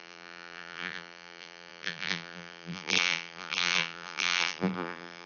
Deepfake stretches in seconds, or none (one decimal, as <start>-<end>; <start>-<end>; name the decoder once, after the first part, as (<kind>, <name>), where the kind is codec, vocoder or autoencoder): 0.0-5.3 (vocoder, BigVGAN v2)